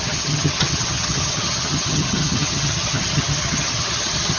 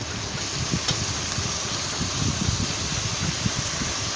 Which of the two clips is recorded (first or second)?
second